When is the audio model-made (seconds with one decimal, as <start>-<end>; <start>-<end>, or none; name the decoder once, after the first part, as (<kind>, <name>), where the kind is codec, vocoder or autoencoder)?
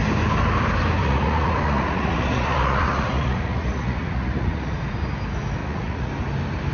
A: 1.0-4.7 (vocoder, Vocos); 5.6-6.1